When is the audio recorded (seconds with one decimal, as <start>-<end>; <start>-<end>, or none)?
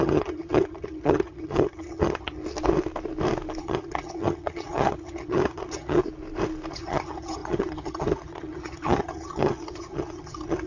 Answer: 2.4-3.6; 6.0-6.7